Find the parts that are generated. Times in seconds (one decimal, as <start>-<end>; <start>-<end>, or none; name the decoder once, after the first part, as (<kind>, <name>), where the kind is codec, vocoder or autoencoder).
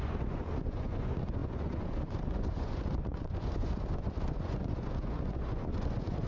0.0-6.3 (vocoder, Vocos)